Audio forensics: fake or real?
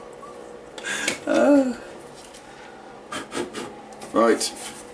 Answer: real